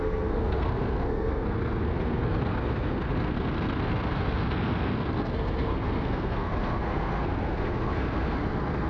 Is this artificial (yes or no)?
yes